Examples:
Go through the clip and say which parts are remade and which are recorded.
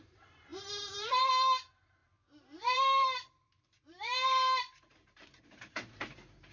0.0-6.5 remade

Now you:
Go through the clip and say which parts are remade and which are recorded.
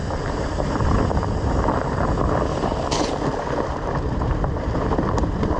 0.0-3.4 recorded; 3.4-5.6 remade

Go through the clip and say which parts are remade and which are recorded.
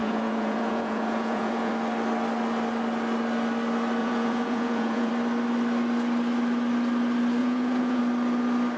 0.0-1.7 remade; 1.7-4.0 recorded; 4.0-5.1 remade; 5.1-7.4 recorded; 7.4-8.0 remade; 8.0-8.8 recorded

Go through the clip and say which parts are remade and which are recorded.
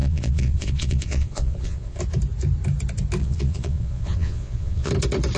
0.0-2.0 remade; 2.0-3.2 recorded; 3.2-4.9 remade; 4.9-5.4 recorded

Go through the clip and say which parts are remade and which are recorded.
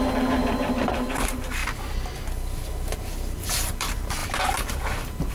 0.0-1.6 remade; 1.6-3.5 recorded; 3.5-5.3 remade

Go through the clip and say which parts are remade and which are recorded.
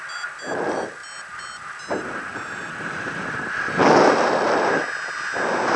0.0-5.8 recorded